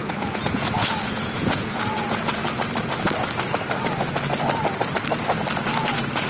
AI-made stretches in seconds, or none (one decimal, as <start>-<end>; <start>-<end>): 0.0-2.4; 5.8-6.3